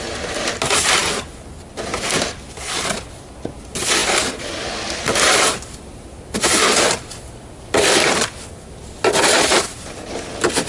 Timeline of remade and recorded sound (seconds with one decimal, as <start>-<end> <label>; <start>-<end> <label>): 0.0-10.7 recorded